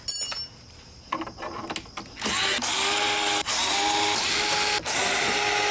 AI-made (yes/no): no